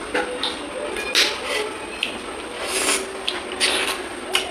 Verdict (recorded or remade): recorded